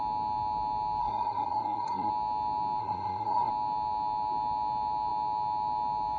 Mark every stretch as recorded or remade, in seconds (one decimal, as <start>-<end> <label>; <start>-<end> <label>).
0.0-1.0 recorded; 1.0-2.1 remade; 2.1-2.8 recorded; 2.8-3.5 remade; 3.5-6.2 recorded